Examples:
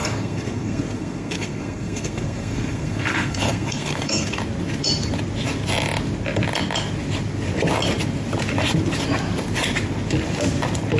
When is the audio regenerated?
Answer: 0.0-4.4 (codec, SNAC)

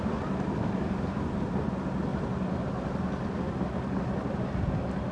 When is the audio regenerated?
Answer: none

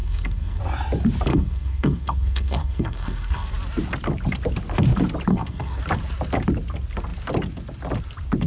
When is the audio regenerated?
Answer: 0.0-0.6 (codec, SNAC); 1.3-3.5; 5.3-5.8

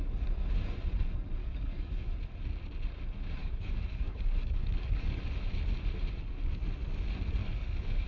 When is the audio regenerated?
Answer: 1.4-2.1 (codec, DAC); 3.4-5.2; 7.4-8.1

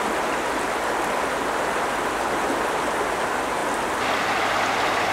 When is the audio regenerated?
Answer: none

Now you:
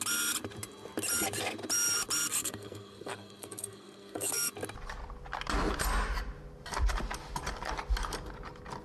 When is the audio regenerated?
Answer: 2.4-4.5 (codec, SNAC)

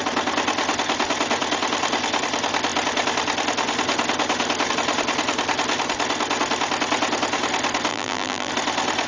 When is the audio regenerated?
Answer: 7.9-8.5 (vocoder, BigVGAN v2)